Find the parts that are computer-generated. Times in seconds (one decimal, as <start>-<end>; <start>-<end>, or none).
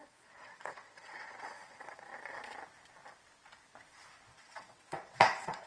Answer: 0.0-2.1; 4.4-5.7